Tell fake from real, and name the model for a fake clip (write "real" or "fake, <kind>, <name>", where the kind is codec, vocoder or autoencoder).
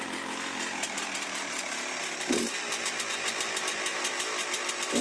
real